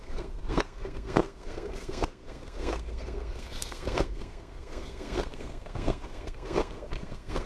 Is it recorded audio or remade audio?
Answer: remade